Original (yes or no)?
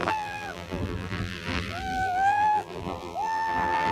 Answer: no